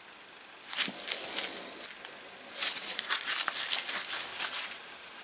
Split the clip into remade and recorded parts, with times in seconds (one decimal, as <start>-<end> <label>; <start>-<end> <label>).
0.0-2.6 recorded; 2.6-3.3 remade; 3.3-4.3 recorded; 4.3-5.2 remade